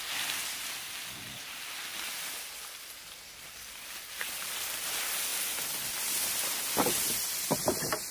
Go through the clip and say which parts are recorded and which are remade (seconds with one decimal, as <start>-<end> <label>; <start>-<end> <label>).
0.0-1.9 remade; 1.9-3.3 recorded; 3.3-5.3 remade; 5.3-7.4 recorded; 7.4-8.1 remade

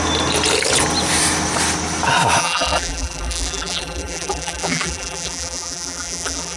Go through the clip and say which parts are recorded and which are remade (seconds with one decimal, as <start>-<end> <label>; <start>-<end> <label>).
0.0-2.4 recorded; 2.4-6.6 remade

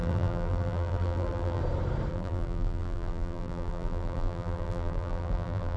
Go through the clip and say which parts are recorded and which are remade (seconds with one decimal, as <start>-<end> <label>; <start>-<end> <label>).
0.0-1.6 remade; 1.6-2.1 recorded; 2.1-5.8 remade

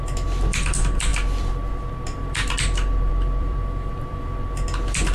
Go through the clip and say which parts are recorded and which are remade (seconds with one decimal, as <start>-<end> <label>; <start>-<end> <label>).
0.0-5.1 remade

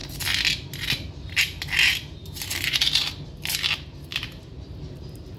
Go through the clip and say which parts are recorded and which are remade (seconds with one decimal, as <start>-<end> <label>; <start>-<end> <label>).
0.0-2.2 recorded; 2.2-2.8 remade; 2.8-4.1 recorded; 4.1-5.4 remade

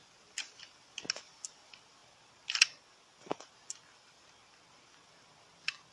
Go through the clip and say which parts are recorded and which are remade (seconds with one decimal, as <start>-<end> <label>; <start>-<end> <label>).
0.0-5.9 recorded